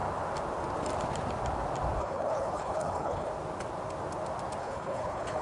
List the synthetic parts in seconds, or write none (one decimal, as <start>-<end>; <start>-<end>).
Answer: 2.0-3.3; 4.6-5.4